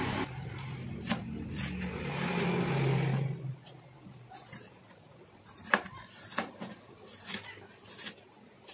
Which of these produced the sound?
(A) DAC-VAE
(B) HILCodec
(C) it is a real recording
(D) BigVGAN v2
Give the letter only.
C